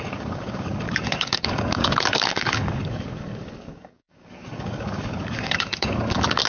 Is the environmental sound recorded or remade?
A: remade